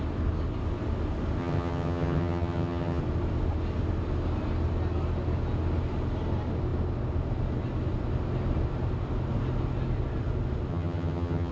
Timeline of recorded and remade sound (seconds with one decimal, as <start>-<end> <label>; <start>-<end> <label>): 0.0-1.4 recorded; 1.4-3.0 remade; 3.0-10.7 recorded; 10.7-11.5 remade